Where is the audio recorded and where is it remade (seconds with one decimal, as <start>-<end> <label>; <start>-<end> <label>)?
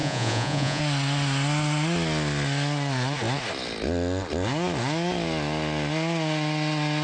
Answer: 0.0-0.8 remade; 0.8-7.0 recorded